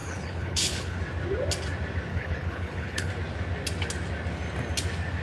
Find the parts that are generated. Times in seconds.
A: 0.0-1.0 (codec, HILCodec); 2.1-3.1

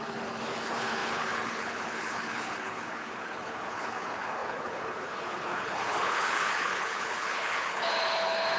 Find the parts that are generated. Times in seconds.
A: 0.0-8.6 (codec, HILCodec)

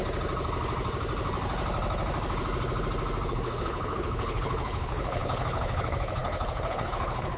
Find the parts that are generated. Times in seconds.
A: 3.3-7.4 (codec, HILCodec)